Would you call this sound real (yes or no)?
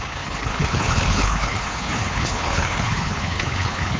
no